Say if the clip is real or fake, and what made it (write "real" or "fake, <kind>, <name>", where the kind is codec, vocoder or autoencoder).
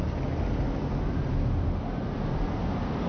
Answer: real